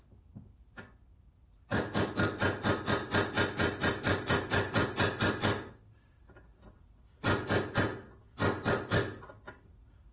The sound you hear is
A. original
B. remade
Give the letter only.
A